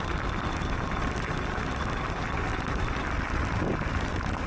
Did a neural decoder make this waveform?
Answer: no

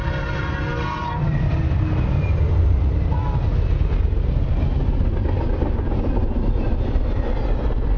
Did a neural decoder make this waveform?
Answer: no